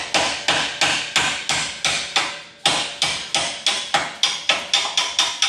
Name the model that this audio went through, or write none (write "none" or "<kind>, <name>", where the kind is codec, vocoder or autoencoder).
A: none